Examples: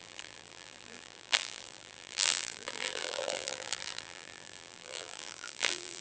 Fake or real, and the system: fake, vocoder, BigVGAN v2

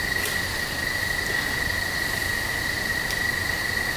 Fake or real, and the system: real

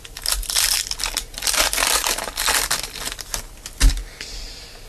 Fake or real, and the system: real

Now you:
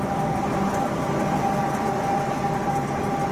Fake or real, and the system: real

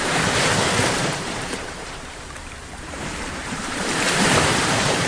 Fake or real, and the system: fake, vocoder, BigVGAN v2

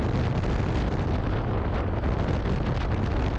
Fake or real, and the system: real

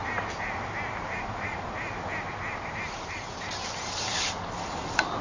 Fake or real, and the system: real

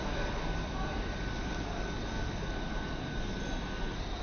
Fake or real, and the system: fake, vocoder, BigVGAN v2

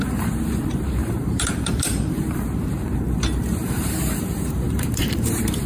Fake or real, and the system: fake, vocoder, BigVGAN v2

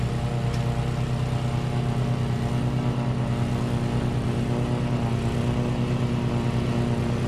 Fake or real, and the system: real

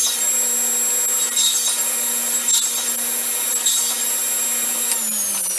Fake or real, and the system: real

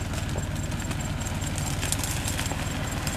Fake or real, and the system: real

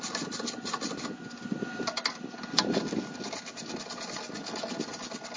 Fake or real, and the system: real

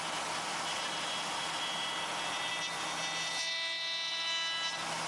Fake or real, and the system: real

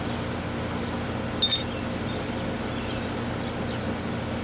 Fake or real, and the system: real